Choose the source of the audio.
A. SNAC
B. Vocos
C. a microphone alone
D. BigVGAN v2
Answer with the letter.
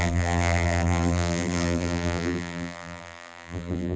D